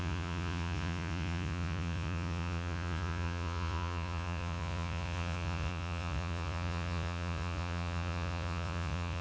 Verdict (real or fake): fake